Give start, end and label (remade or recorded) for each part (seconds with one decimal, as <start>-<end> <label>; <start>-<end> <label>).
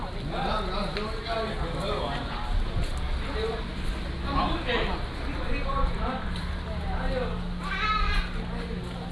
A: 0.0-9.1 recorded